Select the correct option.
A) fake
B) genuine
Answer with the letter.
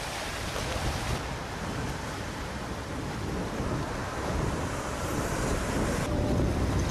B